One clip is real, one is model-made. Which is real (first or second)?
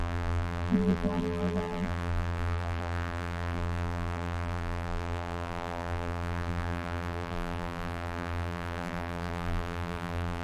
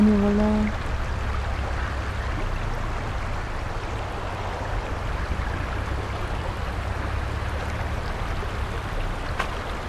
second